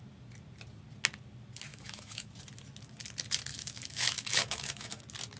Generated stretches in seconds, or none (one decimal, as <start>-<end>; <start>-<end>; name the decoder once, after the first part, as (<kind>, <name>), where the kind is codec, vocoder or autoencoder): 1.7-2.3 (autoencoder, DAC-VAE); 3.5-5.0